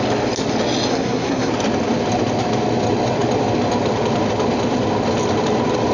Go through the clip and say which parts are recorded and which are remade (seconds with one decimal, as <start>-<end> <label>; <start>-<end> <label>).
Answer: 0.0-0.9 recorded; 0.9-1.5 remade; 1.5-5.9 recorded